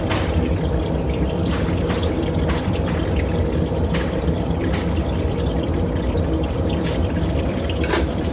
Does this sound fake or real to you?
fake